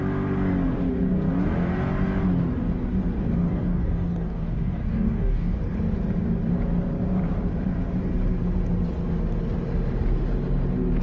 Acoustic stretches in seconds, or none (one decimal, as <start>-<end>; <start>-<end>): 0.0-3.5; 5.6-11.0